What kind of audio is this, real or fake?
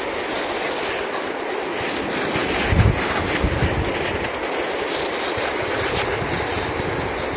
real